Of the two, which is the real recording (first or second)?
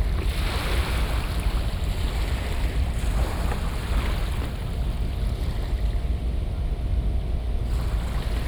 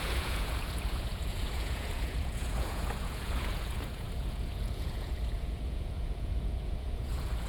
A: first